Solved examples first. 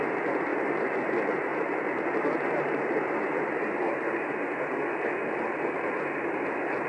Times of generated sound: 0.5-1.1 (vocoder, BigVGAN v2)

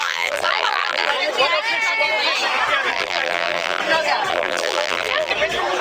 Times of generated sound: 0.0-1.1 (vocoder, BigVGAN v2); 2.9-3.8; 4.3-5.3

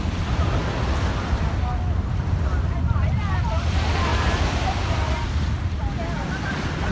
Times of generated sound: 4.1-5.5 (vocoder, BigVGAN v2)